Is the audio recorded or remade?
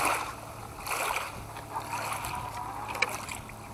recorded